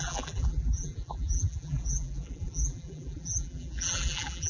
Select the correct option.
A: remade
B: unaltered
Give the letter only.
A